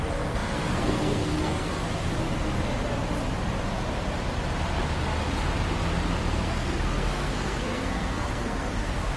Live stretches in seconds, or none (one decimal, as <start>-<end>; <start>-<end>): 1.8-6.3